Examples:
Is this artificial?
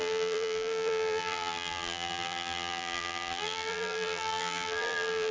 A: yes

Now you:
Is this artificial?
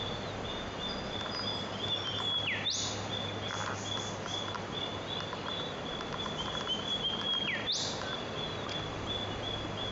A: no